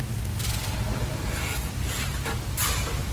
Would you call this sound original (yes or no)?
yes